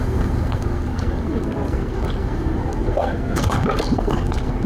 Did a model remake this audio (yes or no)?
yes